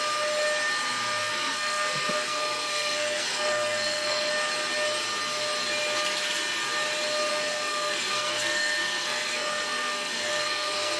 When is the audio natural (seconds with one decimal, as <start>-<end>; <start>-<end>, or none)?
0.0-1.2; 4.3-7.3